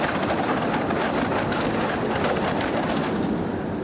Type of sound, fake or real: real